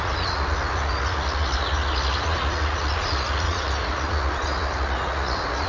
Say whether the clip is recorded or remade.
remade